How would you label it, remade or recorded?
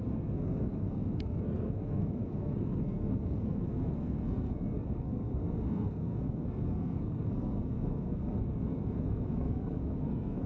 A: remade